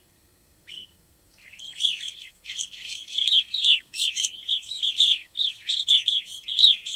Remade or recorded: remade